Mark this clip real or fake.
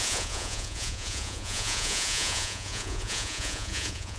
fake